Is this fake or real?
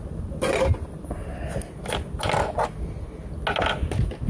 real